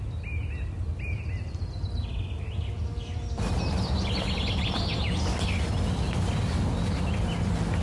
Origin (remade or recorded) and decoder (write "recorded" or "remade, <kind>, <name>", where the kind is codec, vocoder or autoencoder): recorded